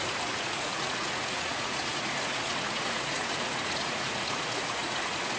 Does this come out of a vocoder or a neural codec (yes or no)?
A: yes